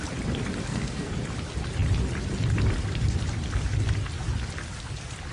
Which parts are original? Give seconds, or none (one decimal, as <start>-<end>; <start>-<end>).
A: 0.0-0.6; 1.1-5.3